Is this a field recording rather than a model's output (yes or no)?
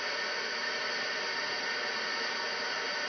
yes